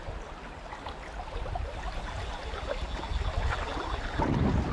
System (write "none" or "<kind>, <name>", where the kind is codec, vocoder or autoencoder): none